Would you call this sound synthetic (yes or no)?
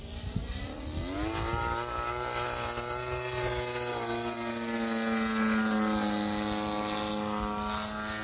no